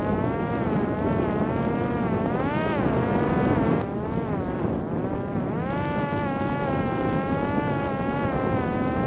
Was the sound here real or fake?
real